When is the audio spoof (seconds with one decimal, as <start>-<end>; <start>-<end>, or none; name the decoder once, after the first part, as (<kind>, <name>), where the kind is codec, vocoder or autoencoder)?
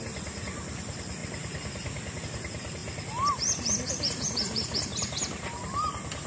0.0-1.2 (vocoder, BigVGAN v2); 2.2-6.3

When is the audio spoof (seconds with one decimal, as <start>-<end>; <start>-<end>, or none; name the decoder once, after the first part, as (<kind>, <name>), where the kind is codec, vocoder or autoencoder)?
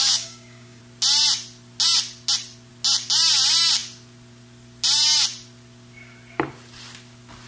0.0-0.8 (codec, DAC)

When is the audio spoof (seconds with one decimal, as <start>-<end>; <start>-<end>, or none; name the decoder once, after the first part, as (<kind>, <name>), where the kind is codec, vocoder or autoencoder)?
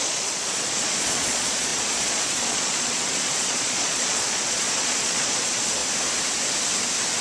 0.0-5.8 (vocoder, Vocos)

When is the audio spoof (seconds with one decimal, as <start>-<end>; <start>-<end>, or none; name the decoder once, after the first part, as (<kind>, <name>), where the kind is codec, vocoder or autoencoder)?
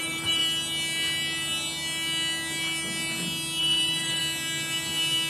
0.0-0.4 (vocoder, BigVGAN v2); 3.6-4.2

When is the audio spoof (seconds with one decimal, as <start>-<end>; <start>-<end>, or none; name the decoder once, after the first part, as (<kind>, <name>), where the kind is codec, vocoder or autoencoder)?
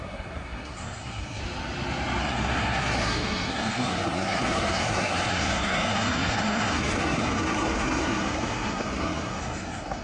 0.0-1.4 (codec, SNAC); 2.2-10.0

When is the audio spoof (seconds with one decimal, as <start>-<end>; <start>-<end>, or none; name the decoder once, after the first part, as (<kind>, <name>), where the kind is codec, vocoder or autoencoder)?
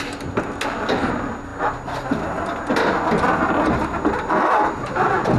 none